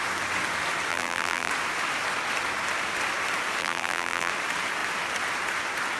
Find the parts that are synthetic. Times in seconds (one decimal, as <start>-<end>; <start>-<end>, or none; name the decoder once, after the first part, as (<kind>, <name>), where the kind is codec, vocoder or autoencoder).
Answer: 0.9-1.5 (vocoder, BigVGAN v2); 3.6-4.3